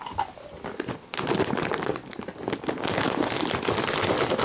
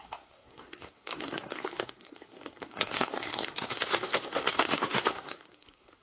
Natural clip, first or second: first